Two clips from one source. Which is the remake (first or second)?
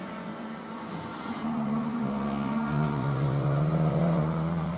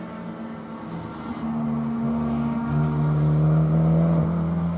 first